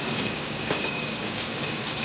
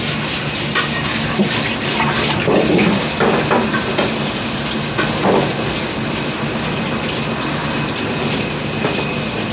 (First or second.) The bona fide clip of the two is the second